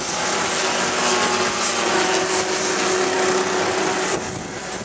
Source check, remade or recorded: recorded